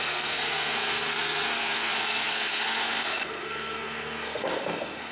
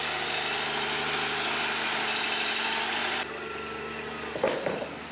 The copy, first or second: first